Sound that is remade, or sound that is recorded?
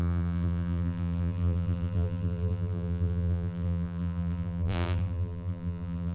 remade